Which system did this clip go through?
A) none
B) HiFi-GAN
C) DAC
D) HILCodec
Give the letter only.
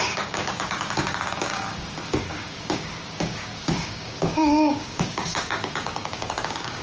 C